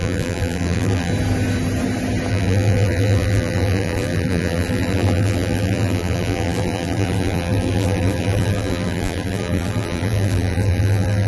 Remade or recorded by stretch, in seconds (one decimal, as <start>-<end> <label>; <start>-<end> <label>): 0.0-1.1 remade; 1.1-2.3 recorded; 2.3-11.3 remade